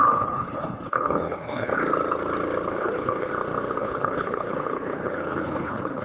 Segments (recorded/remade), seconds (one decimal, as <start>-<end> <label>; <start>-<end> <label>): 0.0-1.7 remade; 1.7-2.7 recorded; 2.7-3.3 remade; 3.3-3.8 recorded; 3.8-6.0 remade